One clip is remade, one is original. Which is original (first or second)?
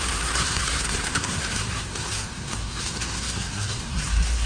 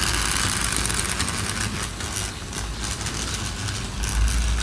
second